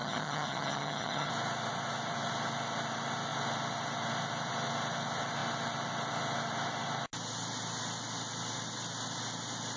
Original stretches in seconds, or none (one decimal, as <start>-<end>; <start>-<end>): 1.3-9.8